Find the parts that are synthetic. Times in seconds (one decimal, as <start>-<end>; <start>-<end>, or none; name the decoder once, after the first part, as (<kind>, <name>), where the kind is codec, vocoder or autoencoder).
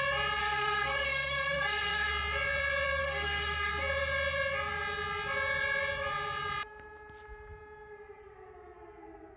0.4-2.1 (codec, SNAC); 3.0-3.7